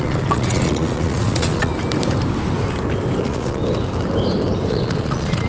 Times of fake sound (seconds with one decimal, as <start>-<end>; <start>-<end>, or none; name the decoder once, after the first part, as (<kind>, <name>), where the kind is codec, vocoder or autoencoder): 0.0-1.7 (vocoder, Vocos); 3.2-3.6; 4.7-5.5